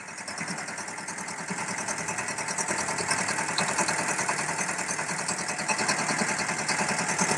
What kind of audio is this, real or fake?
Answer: real